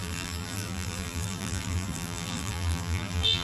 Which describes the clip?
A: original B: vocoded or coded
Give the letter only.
B